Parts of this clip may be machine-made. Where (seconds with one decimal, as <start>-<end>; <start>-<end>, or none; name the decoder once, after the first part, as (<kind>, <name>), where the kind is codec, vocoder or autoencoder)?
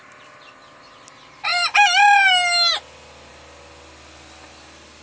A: none